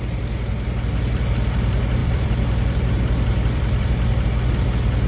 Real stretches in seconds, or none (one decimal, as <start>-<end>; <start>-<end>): 0.0-2.0; 4.5-5.1